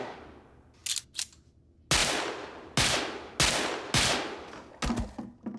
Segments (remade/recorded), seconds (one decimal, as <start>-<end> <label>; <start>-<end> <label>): 0.0-5.6 recorded